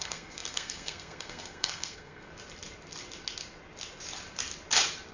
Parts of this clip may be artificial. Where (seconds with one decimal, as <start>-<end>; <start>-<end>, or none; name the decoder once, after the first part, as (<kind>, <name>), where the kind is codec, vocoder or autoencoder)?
0.0-2.3 (codec, SNAC)

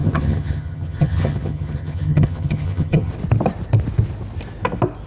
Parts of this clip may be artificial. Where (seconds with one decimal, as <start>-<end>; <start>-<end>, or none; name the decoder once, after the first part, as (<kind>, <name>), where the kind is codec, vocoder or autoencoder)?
0.0-3.1 (vocoder, HiFi-GAN)

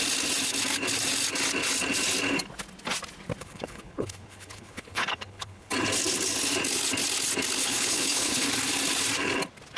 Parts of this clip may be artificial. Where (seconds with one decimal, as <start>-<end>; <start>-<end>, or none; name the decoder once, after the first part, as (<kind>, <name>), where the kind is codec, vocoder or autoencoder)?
3.4-5.7 (codec, HILCodec); 7.6-8.5

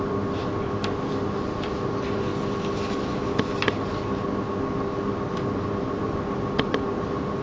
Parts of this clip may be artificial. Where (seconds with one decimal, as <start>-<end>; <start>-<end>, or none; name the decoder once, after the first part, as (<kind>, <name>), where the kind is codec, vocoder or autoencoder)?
none